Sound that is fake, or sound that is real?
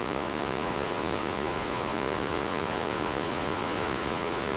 fake